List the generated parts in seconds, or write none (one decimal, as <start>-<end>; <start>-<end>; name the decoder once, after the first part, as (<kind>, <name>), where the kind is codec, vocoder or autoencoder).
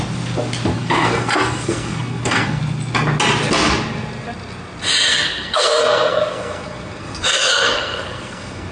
0.7-2.6 (codec, SNAC); 5.1-8.7